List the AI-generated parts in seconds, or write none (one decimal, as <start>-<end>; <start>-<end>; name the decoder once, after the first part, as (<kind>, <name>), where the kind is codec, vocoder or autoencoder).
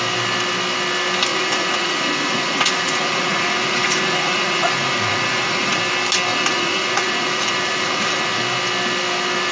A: 1.3-5.8 (vocoder, Vocos); 6.3-8.4